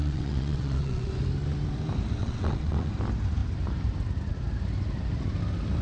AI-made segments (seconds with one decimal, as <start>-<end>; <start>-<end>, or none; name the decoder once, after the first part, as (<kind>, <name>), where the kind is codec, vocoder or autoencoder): 0.0-1.1 (vocoder, WaveNeXt); 2.2-2.9